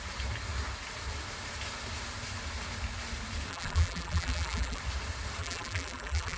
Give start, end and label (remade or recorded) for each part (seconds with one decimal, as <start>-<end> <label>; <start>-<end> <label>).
0.0-3.5 recorded; 3.5-4.8 remade; 4.8-5.4 recorded; 5.4-6.4 remade